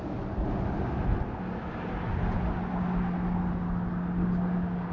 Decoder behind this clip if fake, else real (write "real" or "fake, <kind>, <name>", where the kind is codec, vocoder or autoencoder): real